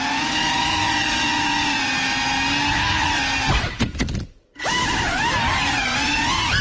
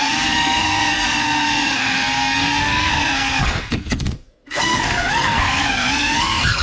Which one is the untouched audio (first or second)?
first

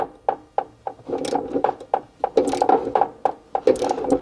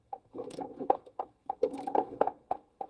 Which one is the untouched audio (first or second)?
first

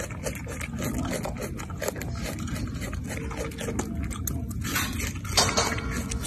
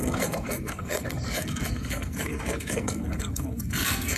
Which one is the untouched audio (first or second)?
first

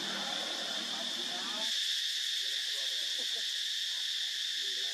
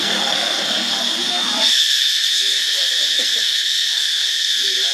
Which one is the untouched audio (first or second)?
first